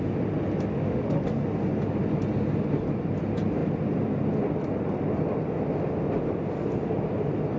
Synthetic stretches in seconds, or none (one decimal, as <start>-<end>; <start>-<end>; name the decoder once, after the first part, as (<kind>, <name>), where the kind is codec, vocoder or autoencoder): 0.7-1.2 (autoencoder, DAC-VAE)